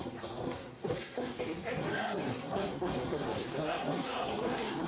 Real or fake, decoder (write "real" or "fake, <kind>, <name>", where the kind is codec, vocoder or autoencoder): fake, codec, SNAC